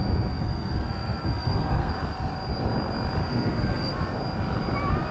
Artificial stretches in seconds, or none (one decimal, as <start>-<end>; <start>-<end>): 0.4-1.9; 3.2-3.9

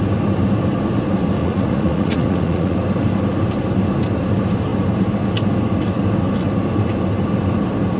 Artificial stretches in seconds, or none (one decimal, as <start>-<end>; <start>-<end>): 1.4-2.8

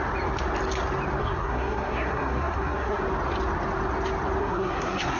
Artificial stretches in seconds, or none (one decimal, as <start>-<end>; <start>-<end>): 1.2-3.0; 4.4-5.2

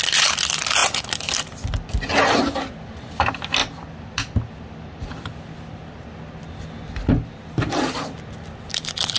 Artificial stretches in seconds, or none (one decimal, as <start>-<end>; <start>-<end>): none